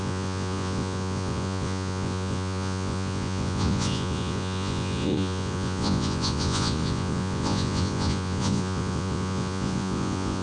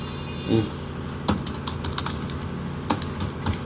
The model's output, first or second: first